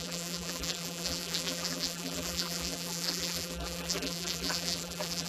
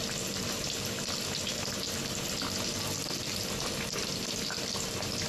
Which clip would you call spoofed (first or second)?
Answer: first